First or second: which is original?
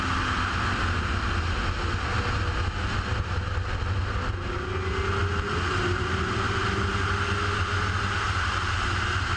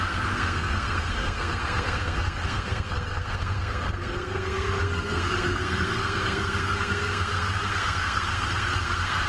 first